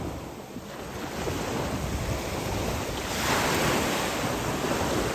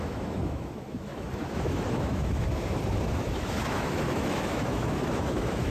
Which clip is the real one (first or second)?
first